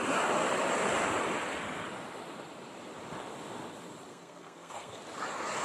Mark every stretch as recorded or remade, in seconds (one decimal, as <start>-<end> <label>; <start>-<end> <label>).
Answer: 0.0-4.1 recorded; 4.1-5.0 remade; 5.0-5.6 recorded